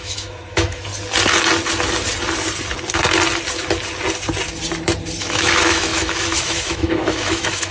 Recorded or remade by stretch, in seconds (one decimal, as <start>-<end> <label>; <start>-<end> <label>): 0.0-0.9 remade; 0.9-5.2 recorded; 5.2-7.7 remade